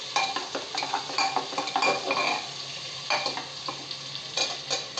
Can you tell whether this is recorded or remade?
recorded